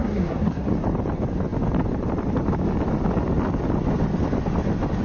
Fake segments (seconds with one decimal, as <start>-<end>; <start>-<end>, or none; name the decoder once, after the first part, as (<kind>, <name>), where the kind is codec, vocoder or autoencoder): 0.0-0.7 (codec, SNAC)